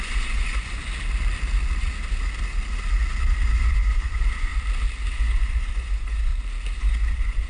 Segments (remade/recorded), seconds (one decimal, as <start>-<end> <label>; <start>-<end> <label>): 0.0-0.8 remade; 0.8-3.5 recorded; 3.5-4.5 remade; 4.5-5.1 recorded; 5.1-6.3 remade; 6.3-6.8 recorded; 6.8-7.5 remade